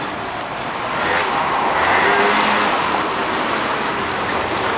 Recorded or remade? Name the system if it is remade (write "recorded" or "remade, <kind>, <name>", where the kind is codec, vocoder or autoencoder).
recorded